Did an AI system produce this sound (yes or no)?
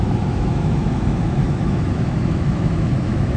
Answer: yes